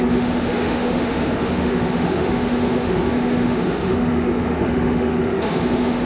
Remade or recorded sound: remade